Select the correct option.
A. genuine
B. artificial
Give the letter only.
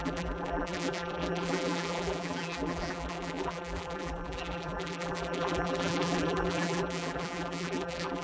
B